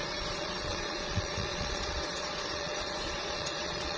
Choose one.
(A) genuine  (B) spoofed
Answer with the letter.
B